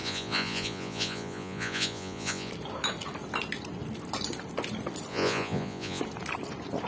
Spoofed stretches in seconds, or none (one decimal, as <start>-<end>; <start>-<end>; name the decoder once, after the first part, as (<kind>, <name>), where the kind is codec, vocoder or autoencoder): 0.0-2.5 (vocoder, Vocos); 5.1-6.0